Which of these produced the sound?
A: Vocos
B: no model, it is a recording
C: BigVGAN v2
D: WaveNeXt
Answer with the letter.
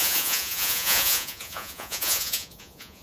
A